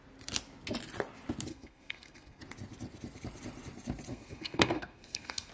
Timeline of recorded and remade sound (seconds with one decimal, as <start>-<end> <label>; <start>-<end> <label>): 0.0-1.5 recorded; 1.5-2.4 remade; 2.4-4.1 recorded; 4.1-5.5 remade

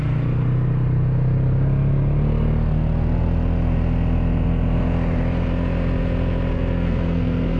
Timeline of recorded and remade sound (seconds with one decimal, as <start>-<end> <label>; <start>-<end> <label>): 0.0-6.5 recorded; 6.5-7.6 remade